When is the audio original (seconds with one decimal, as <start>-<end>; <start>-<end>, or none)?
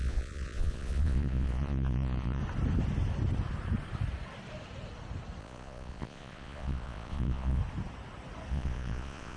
2.4-5.4; 7.6-8.5